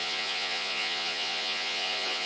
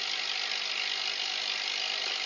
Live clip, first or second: second